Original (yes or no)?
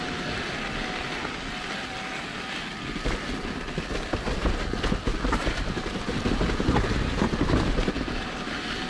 yes